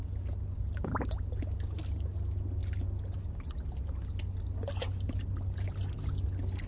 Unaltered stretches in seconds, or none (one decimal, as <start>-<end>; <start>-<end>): 0.0-6.7